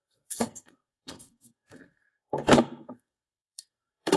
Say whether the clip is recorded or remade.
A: remade